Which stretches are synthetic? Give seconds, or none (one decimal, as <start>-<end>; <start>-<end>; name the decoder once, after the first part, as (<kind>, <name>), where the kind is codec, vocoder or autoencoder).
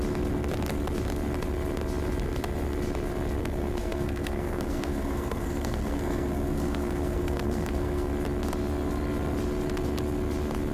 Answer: 3.4-8.1 (codec, SNAC)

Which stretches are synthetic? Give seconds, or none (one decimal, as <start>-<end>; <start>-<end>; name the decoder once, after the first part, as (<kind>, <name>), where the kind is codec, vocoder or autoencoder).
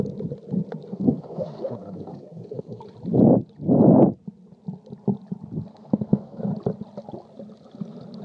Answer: 0.9-2.8 (codec, SNAC); 5.7-6.4